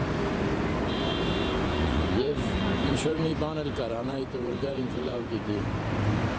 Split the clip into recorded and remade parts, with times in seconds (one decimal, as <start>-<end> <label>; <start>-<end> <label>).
0.0-1.6 recorded; 1.6-3.3 remade; 3.3-3.9 recorded; 3.9-5.7 remade; 5.7-6.4 recorded